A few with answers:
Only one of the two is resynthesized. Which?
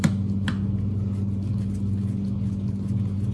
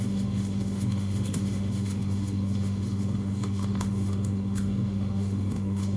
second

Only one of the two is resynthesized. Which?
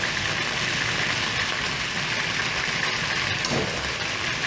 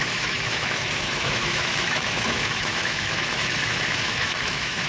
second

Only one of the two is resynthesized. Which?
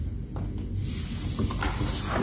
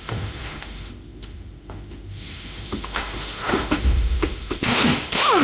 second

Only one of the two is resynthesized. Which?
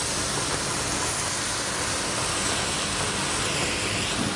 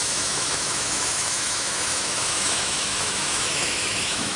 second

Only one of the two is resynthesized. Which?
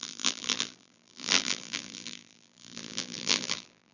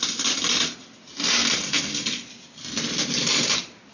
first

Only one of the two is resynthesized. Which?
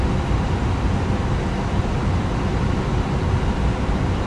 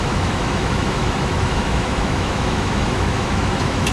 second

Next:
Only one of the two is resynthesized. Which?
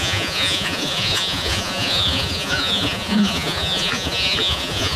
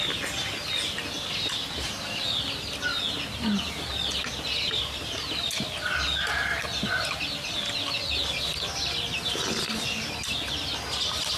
first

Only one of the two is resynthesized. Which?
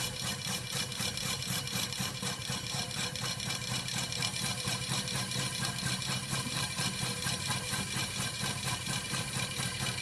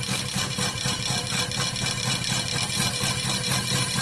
first